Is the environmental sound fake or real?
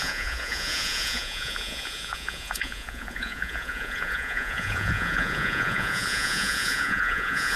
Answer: fake